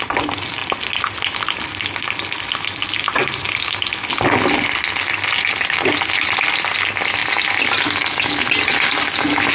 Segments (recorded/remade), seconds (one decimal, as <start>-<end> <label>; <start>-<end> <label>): 0.0-9.5 recorded